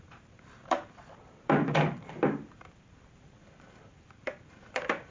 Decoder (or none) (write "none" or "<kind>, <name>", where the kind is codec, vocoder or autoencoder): vocoder, BigVGAN v2